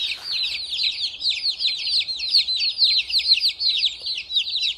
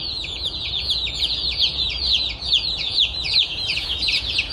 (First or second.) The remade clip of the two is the second